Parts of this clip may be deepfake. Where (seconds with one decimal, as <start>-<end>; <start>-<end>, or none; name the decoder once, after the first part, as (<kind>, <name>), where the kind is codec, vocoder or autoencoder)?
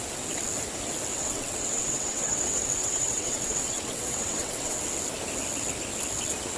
1.1-4.8 (vocoder, WaveNeXt)